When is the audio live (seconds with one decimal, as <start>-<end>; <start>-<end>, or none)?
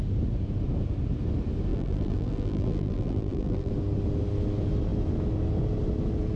0.0-1.7; 3.7-6.4